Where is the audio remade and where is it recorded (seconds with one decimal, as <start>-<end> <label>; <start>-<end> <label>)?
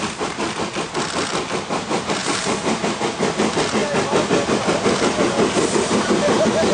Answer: 0.0-6.7 recorded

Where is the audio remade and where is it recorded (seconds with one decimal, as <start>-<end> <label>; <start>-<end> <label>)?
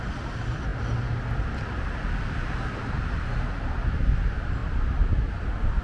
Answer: 0.0-5.8 recorded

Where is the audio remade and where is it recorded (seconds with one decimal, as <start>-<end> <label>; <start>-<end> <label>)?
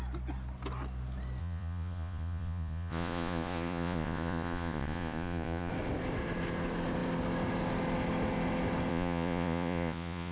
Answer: 0.0-1.4 recorded; 1.4-5.7 remade; 5.7-8.9 recorded; 8.9-10.3 remade